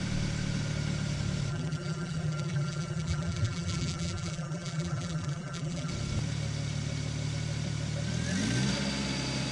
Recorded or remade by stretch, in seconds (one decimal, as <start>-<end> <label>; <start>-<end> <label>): 0.0-1.5 recorded; 1.5-5.9 remade; 5.9-9.5 recorded